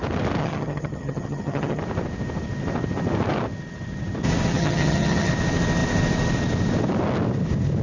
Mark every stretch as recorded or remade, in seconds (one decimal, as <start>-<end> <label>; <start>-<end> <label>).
0.0-0.4 recorded; 0.4-1.8 remade; 1.8-4.5 recorded; 4.5-5.3 remade; 5.3-7.8 recorded